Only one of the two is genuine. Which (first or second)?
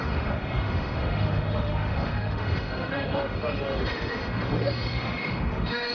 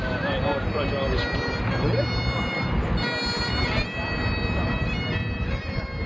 second